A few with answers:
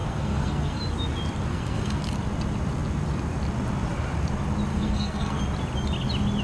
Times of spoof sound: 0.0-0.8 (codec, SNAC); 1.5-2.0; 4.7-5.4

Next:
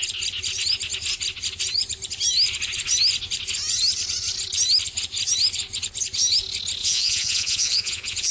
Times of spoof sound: 6.8-8.3 (vocoder, Vocos)

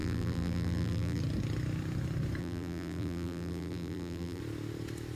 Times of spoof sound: 0.0-1.2 (vocoder, BigVGAN v2); 2.4-4.4

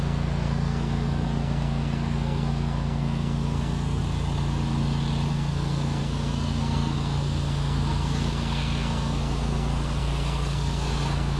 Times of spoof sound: 0.0-4.0 (codec, SNAC); 5.3-11.4

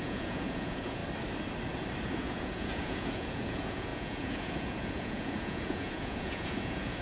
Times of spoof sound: 0.0-1.0 (vocoder, Vocos); 2.1-7.0